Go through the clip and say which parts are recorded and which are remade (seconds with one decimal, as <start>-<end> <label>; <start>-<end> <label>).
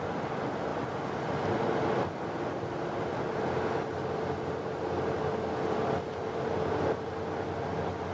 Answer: 0.0-8.1 recorded